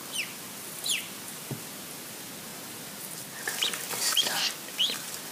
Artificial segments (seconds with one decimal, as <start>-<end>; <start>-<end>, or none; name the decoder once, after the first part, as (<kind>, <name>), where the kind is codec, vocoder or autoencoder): none